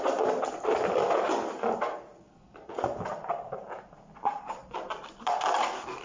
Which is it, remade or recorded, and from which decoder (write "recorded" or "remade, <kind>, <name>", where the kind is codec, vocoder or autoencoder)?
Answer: recorded